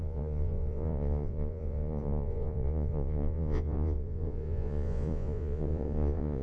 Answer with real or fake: fake